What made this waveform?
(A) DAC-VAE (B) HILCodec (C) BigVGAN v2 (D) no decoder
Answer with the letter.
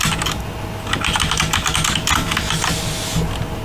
D